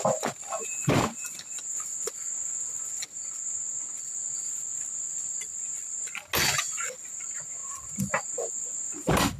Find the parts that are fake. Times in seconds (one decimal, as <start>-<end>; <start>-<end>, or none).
4.7-5.3